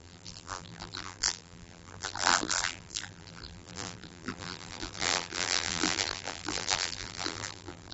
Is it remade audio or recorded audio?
remade